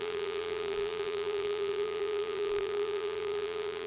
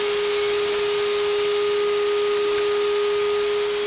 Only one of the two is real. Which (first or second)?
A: second